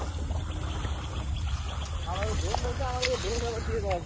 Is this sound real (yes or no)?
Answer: yes